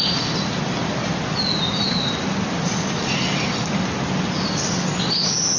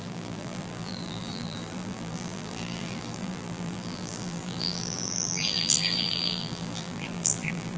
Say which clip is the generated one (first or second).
second